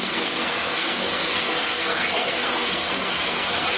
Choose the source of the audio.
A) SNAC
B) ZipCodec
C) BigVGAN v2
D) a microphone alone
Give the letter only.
A